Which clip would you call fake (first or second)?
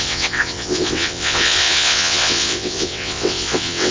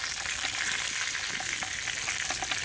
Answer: first